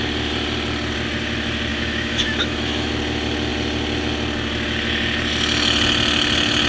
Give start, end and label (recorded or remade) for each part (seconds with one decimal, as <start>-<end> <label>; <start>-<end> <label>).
0.0-1.7 recorded; 1.7-2.9 remade; 2.9-6.7 recorded